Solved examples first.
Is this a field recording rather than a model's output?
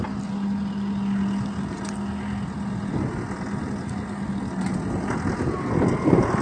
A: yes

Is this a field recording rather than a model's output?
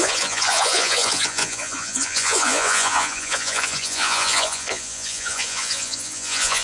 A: no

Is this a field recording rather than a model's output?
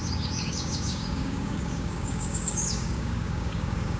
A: no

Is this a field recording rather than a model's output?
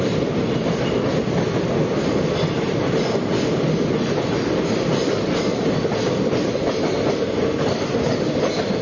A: yes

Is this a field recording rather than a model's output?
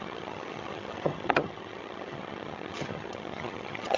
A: no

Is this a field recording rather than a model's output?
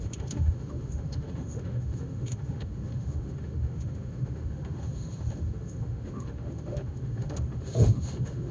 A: no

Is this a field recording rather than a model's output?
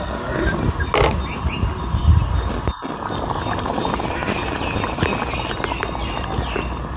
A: yes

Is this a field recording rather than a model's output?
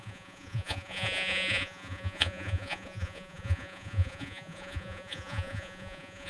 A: no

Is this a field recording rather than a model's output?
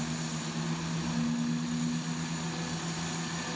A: yes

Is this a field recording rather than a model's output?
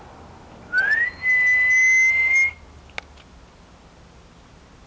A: yes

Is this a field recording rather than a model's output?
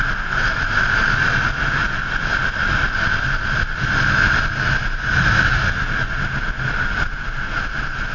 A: yes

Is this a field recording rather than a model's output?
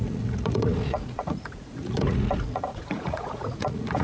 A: no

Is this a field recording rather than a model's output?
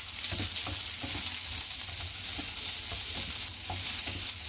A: yes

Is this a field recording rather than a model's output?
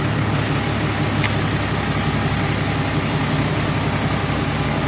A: yes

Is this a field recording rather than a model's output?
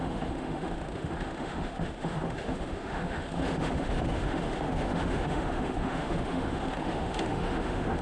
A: no